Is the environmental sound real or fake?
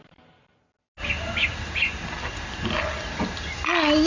real